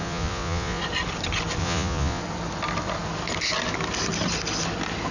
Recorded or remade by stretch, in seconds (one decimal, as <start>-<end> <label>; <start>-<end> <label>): 0.0-0.8 remade; 0.8-1.6 recorded; 1.6-2.2 remade; 2.2-5.1 recorded